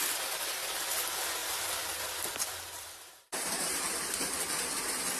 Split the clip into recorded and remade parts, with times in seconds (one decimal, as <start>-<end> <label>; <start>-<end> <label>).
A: 0.0-5.2 remade